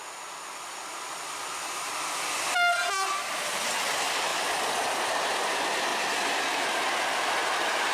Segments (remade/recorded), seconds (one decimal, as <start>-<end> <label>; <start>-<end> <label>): 0.0-7.9 recorded